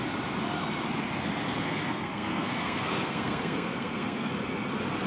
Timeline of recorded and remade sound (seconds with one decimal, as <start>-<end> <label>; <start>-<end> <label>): 0.0-1.5 recorded; 1.5-4.3 remade; 4.3-5.1 recorded

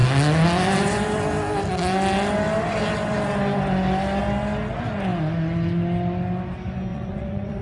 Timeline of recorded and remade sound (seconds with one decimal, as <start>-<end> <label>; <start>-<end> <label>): 0.0-6.9 recorded; 6.9-7.6 remade